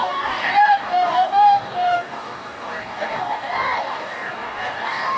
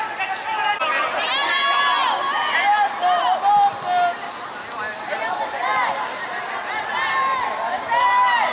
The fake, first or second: first